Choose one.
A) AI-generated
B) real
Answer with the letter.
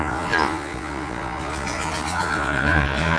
A